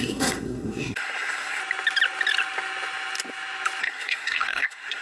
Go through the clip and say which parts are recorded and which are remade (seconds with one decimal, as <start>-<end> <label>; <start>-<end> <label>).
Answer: 0.0-1.6 remade; 1.6-3.8 recorded; 3.8-5.0 remade